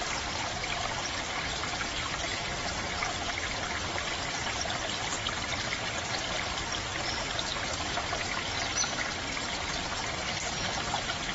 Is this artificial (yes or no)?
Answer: no